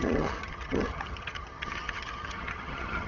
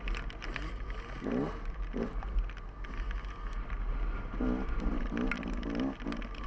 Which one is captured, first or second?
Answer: second